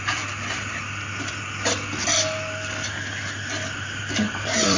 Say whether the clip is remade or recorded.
remade